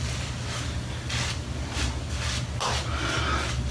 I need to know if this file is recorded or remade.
recorded